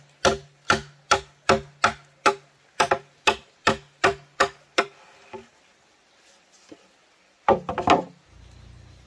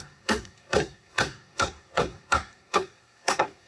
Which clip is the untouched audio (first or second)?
first